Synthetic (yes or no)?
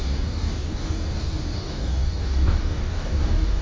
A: yes